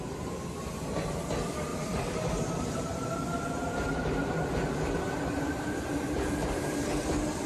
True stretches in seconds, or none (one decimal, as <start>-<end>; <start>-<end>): 0.0-1.7; 3.4-6.4; 6.9-7.5